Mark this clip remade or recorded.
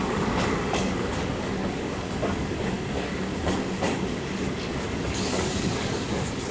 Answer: remade